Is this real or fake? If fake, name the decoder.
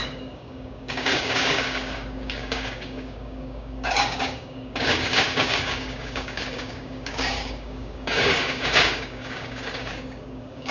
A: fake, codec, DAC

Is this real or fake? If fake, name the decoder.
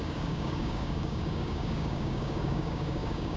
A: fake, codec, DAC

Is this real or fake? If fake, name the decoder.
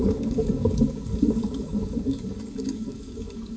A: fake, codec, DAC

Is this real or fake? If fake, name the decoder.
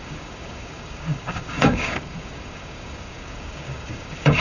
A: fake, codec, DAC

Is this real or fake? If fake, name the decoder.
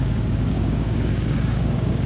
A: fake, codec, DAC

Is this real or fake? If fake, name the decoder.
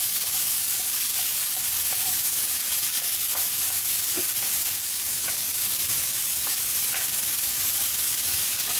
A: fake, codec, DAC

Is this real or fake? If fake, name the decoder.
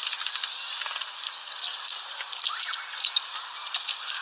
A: real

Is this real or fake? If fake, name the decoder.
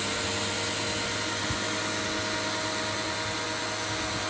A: real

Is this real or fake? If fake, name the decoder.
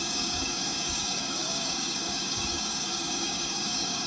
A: fake, codec, DAC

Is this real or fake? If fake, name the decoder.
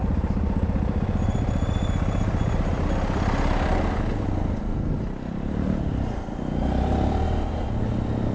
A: real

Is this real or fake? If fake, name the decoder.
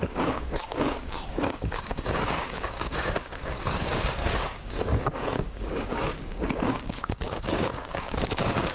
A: fake, codec, DAC